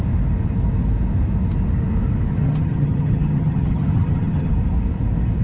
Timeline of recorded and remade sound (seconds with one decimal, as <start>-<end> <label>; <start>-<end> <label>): 0.0-2.3 recorded; 2.3-4.5 remade; 4.5-5.4 recorded